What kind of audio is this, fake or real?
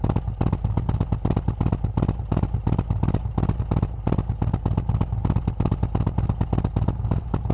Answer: real